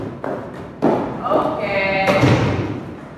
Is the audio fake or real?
real